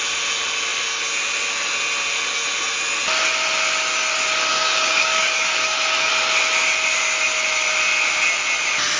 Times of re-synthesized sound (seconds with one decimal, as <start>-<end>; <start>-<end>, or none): 4.5-6.1